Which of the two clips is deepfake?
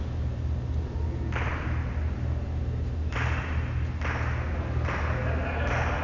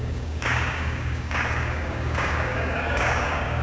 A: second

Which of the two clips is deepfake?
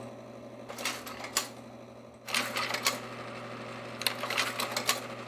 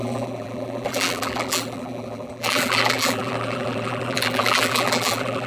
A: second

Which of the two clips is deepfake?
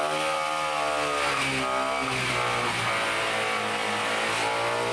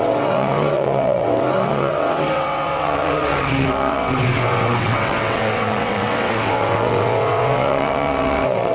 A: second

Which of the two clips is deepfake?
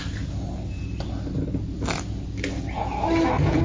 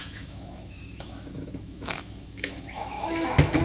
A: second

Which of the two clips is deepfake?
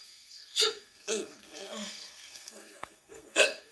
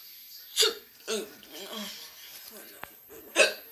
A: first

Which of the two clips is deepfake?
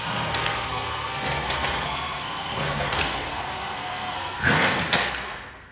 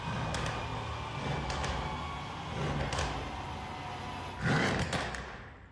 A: first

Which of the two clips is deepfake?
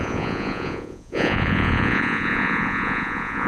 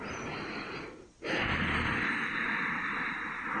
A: first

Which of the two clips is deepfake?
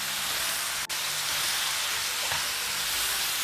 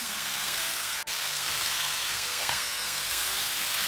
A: second